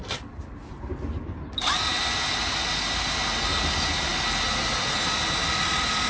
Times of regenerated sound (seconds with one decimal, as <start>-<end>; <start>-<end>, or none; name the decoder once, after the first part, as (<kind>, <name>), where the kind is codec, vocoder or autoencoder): none